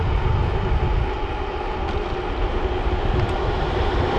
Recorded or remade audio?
recorded